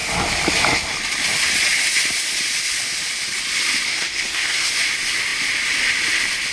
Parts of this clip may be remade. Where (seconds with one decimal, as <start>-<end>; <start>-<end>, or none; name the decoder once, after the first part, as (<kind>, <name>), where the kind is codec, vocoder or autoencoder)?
3.9-4.7 (codec, SNAC)